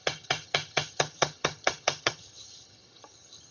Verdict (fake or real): fake